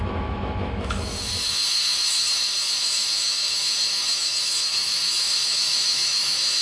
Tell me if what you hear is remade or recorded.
remade